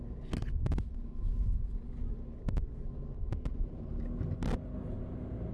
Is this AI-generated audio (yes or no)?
no